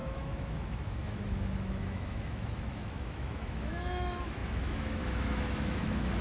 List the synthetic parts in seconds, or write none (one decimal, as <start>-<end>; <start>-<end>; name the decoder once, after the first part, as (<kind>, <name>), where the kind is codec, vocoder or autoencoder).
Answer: 0.0-6.2 (autoencoder, DAC-VAE)